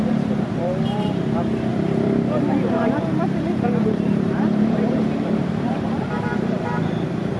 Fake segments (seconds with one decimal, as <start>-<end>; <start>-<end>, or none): 0.0-7.4